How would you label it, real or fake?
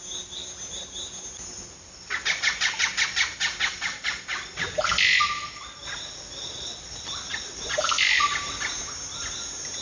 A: real